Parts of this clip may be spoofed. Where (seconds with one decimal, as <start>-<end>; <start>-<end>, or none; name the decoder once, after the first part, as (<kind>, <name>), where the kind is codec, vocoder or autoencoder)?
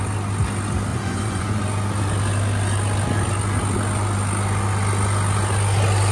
0.9-1.6 (vocoder, Vocos)